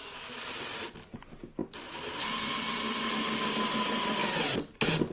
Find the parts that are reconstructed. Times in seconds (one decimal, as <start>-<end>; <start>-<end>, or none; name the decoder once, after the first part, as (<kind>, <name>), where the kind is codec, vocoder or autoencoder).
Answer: none